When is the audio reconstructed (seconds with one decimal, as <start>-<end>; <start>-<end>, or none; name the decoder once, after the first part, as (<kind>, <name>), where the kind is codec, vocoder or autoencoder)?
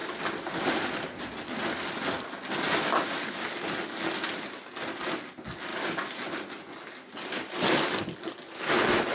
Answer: none